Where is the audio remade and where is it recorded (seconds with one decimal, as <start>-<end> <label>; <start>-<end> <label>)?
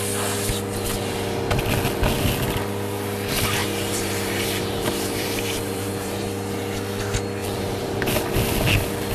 0.0-3.6 recorded; 3.6-6.2 remade; 6.2-7.4 recorded; 7.4-8.0 remade; 8.0-9.1 recorded